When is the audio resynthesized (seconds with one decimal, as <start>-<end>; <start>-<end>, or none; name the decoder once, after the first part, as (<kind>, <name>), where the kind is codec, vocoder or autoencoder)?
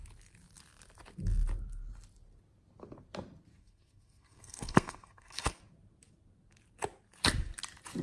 3.6-5.6 (codec, SNAC)